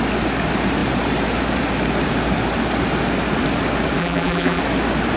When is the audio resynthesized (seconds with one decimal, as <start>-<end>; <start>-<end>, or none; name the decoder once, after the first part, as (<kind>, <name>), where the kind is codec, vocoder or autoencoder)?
4.0-4.6 (vocoder, BigVGAN v2)